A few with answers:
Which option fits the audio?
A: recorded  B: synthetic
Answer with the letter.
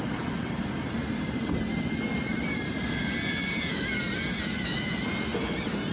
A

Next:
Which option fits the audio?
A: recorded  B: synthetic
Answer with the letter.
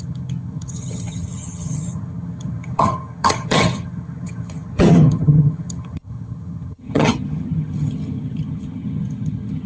B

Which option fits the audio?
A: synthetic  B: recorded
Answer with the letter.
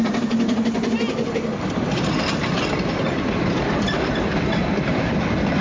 B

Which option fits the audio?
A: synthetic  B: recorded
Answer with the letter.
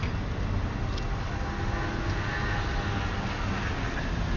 B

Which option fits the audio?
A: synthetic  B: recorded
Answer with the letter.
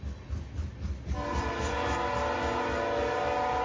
B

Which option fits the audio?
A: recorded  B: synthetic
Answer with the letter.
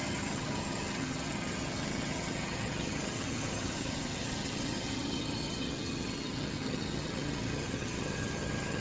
B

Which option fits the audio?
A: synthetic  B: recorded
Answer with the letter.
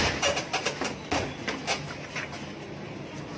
B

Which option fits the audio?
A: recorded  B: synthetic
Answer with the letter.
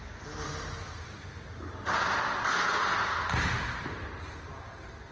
A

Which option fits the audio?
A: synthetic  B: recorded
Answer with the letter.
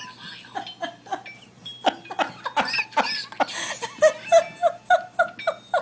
B